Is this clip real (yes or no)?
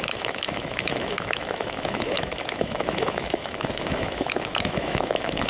no